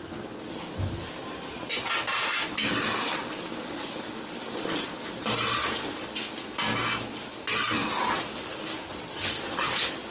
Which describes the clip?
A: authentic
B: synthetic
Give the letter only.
A